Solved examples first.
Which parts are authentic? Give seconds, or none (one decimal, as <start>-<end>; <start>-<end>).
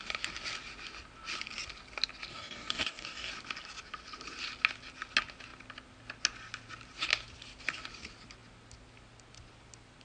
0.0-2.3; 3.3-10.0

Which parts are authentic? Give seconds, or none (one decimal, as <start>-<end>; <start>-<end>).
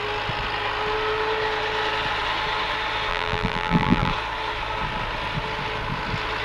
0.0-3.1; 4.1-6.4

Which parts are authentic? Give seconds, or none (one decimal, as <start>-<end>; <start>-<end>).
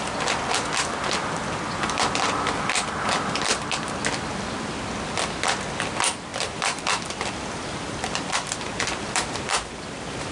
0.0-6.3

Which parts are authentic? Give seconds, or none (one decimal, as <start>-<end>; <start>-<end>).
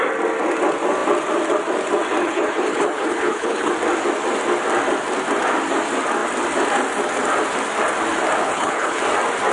0.0-2.2; 3.7-8.4; 9.0-9.5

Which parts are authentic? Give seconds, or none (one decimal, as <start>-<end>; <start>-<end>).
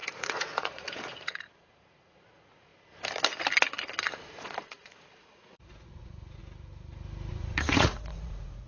2.7-4.1; 6.4-7.3